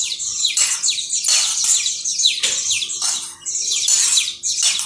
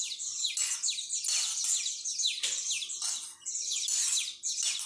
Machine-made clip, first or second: first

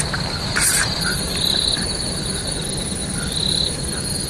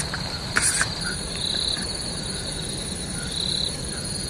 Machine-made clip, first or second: second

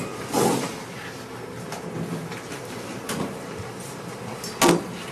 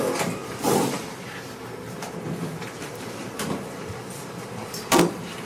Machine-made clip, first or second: second